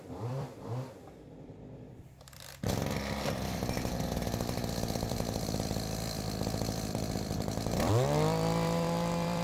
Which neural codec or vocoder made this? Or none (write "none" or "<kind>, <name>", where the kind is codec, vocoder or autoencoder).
vocoder, BigVGAN v2